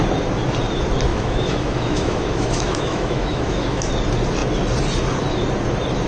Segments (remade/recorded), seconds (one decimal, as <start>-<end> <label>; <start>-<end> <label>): 0.0-1.1 recorded; 1.1-3.9 remade; 3.9-6.1 recorded

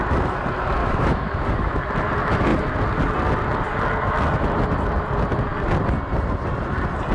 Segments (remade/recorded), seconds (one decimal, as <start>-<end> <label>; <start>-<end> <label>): 0.0-0.8 recorded; 0.8-1.8 remade; 1.8-7.1 recorded

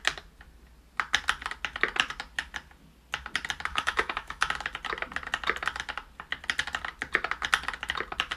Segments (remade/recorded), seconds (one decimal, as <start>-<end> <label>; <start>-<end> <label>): 0.0-3.7 recorded; 3.7-4.5 remade; 4.5-8.4 recorded